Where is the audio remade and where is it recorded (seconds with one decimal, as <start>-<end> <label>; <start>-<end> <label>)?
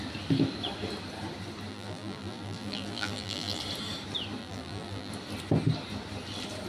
0.0-1.7 recorded; 1.7-3.6 remade; 3.6-4.4 recorded; 4.4-5.1 remade; 5.1-6.7 recorded